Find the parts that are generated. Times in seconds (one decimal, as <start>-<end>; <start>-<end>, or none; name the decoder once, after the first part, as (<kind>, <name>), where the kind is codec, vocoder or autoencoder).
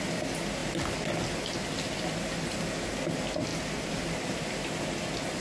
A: none